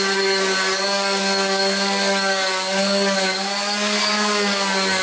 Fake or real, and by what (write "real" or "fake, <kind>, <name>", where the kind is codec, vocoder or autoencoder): fake, codec, DAC